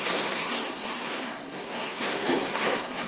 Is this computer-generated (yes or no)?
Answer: yes